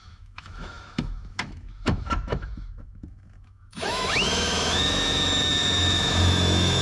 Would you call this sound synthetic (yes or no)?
yes